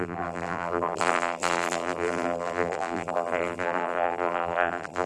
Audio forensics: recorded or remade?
remade